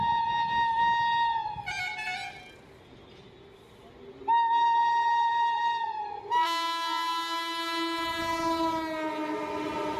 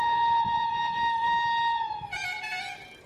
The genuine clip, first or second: first